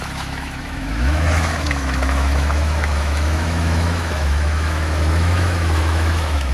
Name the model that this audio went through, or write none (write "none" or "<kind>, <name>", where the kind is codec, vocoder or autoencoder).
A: autoencoder, DAC-VAE